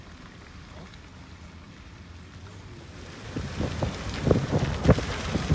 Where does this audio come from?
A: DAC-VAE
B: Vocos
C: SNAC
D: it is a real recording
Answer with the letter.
D